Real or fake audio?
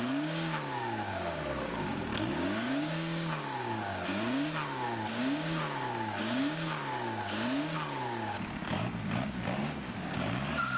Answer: fake